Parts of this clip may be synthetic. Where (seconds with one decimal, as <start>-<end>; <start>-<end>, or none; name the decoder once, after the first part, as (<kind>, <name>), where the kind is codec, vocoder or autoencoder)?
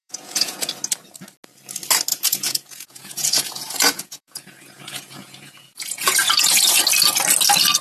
0.0-0.7 (vocoder, Vocos); 2.1-6.8